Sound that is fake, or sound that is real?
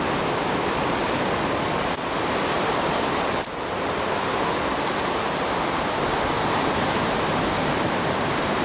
real